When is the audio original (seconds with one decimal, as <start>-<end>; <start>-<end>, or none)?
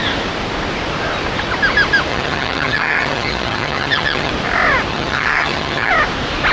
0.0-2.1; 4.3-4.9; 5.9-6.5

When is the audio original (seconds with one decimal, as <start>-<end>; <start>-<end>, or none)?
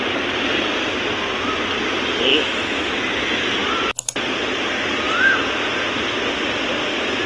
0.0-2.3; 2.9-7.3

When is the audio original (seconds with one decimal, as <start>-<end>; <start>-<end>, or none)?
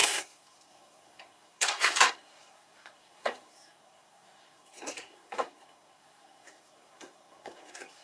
none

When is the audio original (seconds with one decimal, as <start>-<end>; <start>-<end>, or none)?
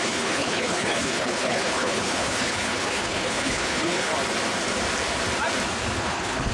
4.1-6.0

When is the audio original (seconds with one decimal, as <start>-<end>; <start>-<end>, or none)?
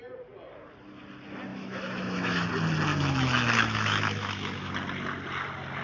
0.0-1.5; 2.5-2.9; 4.7-5.8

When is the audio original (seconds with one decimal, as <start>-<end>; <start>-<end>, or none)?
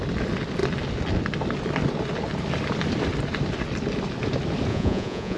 0.0-4.7